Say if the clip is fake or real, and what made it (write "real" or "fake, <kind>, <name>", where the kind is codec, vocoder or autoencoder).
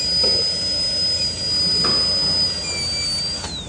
real